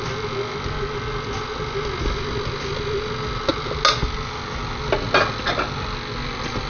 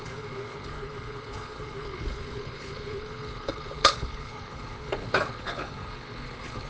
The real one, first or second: first